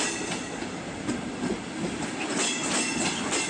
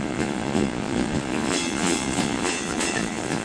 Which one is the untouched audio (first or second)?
first